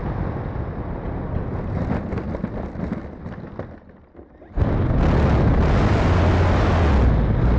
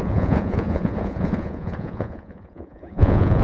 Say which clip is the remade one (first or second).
second